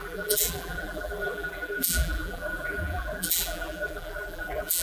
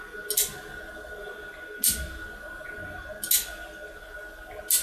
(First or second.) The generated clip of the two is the first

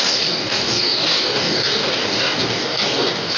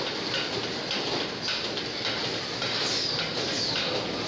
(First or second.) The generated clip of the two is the first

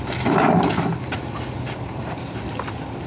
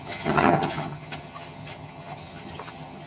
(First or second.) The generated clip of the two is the second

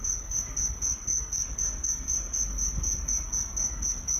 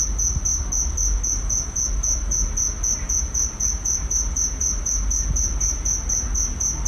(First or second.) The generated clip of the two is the first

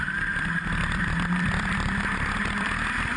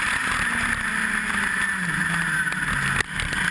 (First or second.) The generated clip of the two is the first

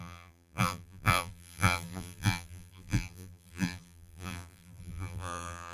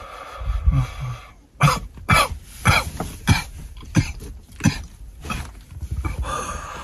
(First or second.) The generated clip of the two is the first